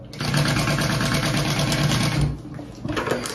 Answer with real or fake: real